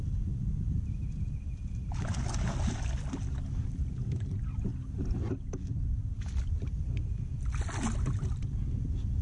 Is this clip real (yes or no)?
yes